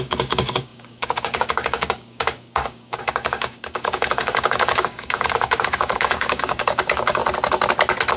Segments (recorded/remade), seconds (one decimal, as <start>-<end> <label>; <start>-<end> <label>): 0.0-7.2 remade; 7.2-8.2 recorded